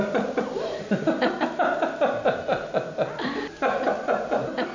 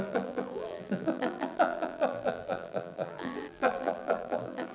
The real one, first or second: first